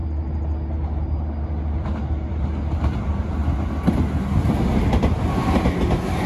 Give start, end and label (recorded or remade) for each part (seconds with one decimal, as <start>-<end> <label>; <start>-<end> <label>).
0.0-6.3 recorded